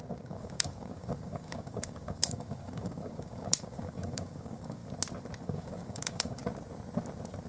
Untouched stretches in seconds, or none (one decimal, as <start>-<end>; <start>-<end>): 4.8-5.4; 6.4-7.5